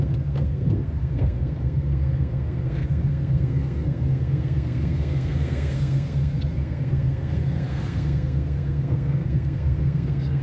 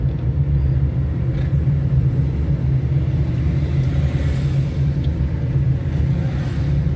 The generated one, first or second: first